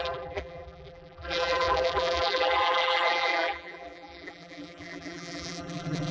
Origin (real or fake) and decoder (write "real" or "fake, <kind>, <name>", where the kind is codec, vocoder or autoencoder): fake, vocoder, BigVGAN v2